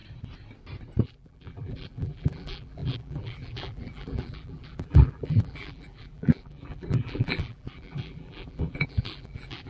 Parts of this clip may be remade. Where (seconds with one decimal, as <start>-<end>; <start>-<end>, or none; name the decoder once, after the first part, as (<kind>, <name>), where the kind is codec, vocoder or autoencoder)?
1.0-9.7 (vocoder, BigVGAN v2)